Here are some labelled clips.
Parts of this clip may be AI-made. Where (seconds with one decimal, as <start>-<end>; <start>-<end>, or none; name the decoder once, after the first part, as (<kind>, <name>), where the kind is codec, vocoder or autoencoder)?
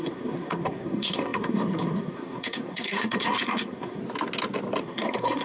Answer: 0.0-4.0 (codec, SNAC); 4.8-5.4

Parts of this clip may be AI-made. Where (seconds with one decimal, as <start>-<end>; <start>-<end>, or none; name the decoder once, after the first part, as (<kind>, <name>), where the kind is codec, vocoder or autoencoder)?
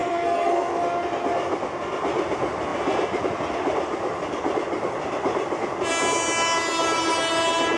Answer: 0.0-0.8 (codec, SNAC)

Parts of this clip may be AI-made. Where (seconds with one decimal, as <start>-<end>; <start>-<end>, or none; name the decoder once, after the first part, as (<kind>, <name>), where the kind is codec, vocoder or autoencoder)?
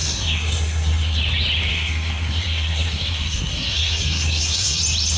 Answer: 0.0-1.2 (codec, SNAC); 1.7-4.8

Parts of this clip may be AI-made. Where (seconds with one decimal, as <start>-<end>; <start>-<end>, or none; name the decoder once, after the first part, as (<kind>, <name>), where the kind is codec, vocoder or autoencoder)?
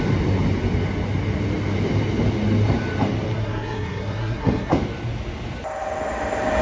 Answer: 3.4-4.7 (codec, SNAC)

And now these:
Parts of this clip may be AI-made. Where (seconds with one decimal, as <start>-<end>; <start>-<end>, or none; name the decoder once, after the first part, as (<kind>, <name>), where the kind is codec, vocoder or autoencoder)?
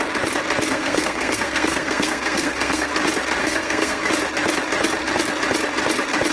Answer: 0.7-2.9 (codec, SNAC); 3.4-4.1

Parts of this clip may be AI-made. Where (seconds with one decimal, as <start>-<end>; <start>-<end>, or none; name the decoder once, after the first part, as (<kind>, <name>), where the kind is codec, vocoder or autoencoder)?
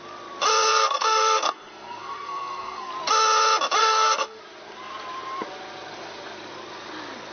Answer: 0.7-2.9 (codec, SNAC); 3.8-4.4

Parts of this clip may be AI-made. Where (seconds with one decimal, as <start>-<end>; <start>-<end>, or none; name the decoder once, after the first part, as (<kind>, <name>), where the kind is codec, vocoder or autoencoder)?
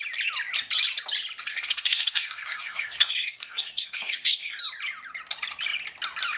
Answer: 1.5-4.6 (codec, SNAC)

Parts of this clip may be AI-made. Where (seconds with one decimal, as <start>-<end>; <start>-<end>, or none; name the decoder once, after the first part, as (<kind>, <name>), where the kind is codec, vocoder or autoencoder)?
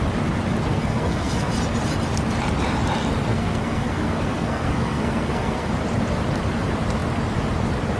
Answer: 0.7-1.5 (codec, SNAC); 3.3-5.7